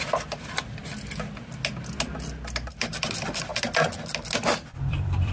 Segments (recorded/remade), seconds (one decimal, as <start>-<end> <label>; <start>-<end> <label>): 0.0-0.8 remade; 0.8-2.7 recorded; 2.7-3.5 remade; 3.5-4.7 recorded; 4.7-5.3 remade